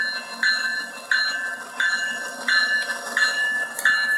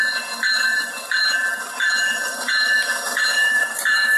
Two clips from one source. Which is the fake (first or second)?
second